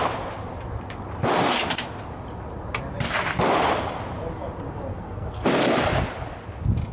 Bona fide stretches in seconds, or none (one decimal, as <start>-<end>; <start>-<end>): 0.0-4.9; 5.4-6.9